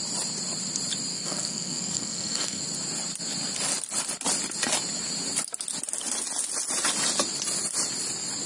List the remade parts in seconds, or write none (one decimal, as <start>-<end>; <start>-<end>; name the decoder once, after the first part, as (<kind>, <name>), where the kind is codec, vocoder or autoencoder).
1.1-2.6 (codec, SNAC)